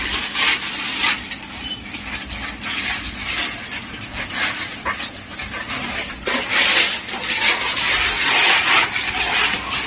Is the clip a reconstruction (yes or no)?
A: no